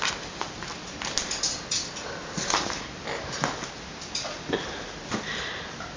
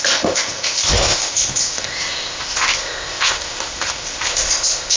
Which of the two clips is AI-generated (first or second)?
second